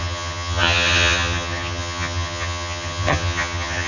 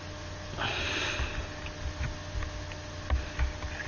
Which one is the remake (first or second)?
first